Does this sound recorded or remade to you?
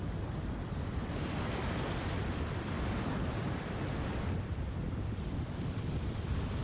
remade